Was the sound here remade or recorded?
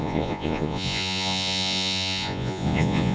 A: remade